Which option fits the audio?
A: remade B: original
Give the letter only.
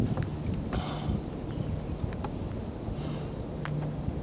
B